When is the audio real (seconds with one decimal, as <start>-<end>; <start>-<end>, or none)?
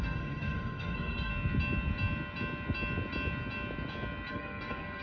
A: 1.3-4.3